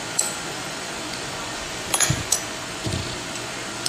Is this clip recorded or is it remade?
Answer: remade